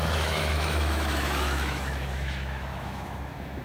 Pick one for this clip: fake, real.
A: fake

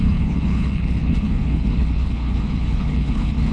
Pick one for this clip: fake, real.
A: fake